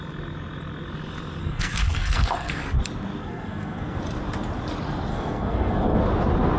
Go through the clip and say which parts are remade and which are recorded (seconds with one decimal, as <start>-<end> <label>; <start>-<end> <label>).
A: 0.0-1.4 recorded; 1.4-2.8 remade; 2.8-3.2 recorded; 3.2-4.0 remade; 4.0-5.1 recorded; 5.1-6.0 remade; 6.0-6.6 recorded